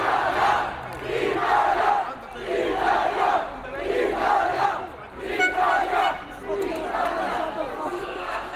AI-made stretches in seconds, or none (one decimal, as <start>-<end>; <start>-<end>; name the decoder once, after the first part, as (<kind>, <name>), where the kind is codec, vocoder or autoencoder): 7.7-8.6 (codec, SNAC)